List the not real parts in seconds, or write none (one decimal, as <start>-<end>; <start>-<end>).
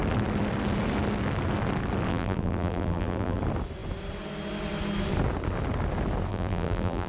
2.1-3.4; 6.3-7.1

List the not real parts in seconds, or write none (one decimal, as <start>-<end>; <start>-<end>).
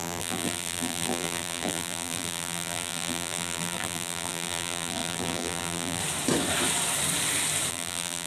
0.0-6.0; 7.7-8.3